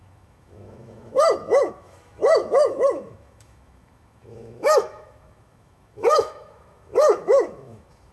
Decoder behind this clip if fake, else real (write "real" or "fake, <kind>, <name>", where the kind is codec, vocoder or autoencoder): fake, autoencoder, DAC-VAE